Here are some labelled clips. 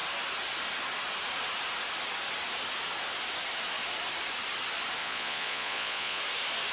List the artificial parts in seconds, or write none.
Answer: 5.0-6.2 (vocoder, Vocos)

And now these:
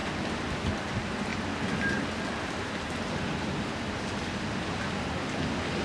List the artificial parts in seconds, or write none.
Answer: none